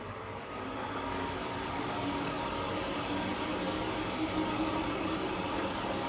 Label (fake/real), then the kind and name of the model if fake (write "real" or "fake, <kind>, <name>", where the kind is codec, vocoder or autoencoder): fake, codec, DAC